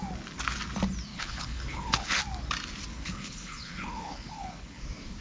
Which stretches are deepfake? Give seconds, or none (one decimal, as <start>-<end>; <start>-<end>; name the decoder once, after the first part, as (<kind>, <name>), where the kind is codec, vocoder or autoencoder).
1.1-2.2 (codec, HILCodec); 2.9-4.8